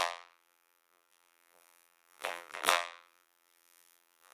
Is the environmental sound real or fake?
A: fake